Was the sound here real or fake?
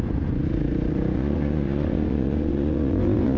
fake